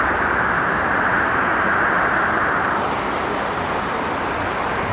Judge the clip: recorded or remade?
recorded